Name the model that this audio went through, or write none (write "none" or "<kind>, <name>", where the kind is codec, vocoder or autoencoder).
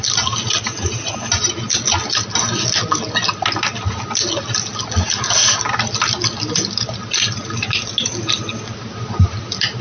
none